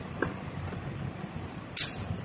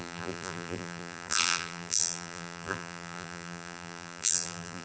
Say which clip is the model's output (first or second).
second